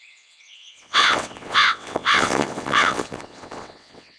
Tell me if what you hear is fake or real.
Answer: fake